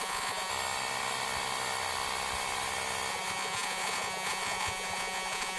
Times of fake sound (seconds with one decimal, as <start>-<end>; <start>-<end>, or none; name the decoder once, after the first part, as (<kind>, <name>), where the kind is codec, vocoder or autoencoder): 0.0-0.5 (vocoder, Vocos); 3.1-5.6